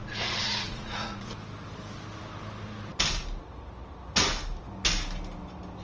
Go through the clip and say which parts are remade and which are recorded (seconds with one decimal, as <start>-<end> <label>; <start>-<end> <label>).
0.0-1.3 remade; 1.3-5.8 recorded